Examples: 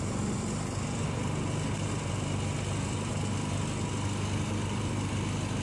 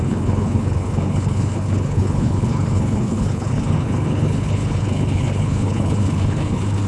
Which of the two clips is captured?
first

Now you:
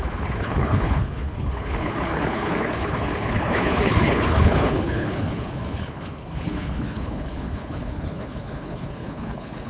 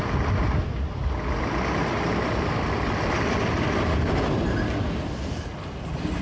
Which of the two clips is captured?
second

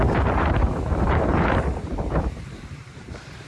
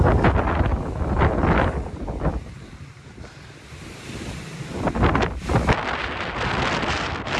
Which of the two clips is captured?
second